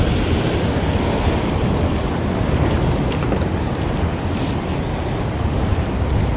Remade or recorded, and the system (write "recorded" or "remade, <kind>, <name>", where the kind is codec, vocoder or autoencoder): recorded